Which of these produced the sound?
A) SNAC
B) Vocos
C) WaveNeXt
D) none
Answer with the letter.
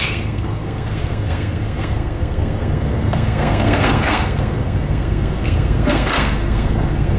A